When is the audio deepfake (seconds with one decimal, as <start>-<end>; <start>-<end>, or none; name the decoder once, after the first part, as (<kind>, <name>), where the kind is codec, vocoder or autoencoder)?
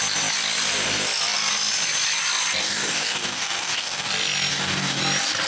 2.6-4.1 (codec, DAC); 4.5-5.0